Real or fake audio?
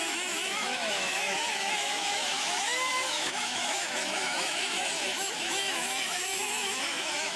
fake